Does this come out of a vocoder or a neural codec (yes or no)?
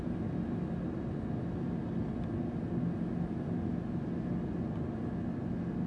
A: no